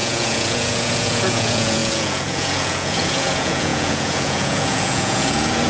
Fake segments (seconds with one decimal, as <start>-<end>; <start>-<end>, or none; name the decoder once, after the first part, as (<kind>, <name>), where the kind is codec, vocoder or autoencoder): 0.0-5.7 (vocoder, Vocos)